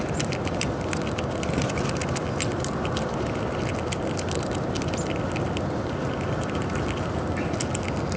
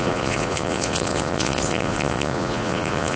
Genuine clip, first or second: first